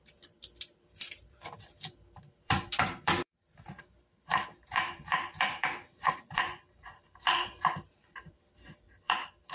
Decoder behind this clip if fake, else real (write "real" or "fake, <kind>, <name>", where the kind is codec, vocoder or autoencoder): fake, vocoder, BigVGAN v2